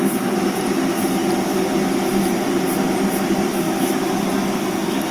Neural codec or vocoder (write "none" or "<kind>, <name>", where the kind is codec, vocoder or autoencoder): none